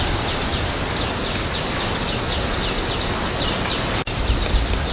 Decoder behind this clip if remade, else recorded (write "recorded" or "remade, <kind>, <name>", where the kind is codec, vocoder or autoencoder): recorded